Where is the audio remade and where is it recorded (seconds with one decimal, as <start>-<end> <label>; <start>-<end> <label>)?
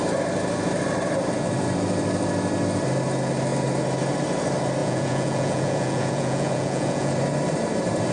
0.0-4.8 recorded; 4.8-7.1 remade; 7.1-8.1 recorded